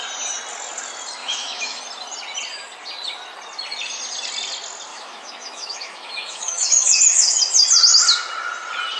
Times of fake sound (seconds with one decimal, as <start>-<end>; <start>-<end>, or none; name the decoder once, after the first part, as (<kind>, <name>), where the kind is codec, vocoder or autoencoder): 1.2-1.8 (autoencoder, DAC-VAE); 4.9-7.4